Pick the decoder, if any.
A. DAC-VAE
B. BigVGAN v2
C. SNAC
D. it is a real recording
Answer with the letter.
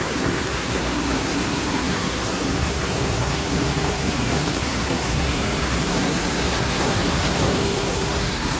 C